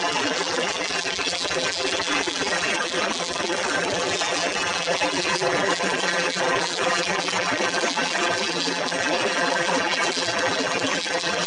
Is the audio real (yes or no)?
no